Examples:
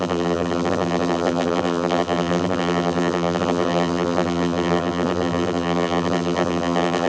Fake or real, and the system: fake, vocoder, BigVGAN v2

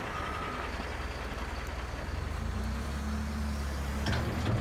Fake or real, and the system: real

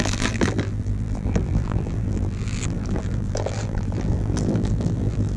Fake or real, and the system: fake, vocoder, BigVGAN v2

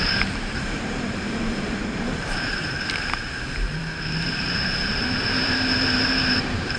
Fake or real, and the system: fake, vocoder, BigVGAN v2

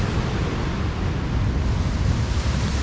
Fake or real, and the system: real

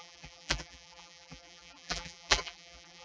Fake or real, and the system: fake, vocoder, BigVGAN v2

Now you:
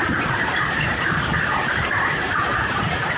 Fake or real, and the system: fake, vocoder, BigVGAN v2